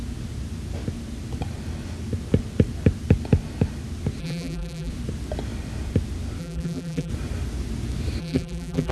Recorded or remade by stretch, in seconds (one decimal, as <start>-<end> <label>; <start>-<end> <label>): 0.0-4.2 recorded; 4.2-4.9 remade; 4.9-6.4 recorded; 6.4-7.1 remade; 7.1-8.2 recorded; 8.2-8.9 remade